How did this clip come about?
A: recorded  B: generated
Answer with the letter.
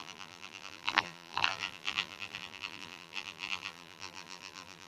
B